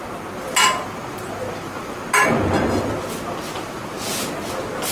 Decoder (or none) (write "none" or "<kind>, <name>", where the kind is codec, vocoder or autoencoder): none